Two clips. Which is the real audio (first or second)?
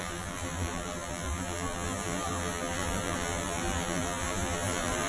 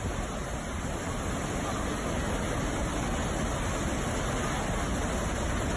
second